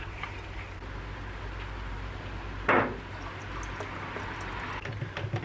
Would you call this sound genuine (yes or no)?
yes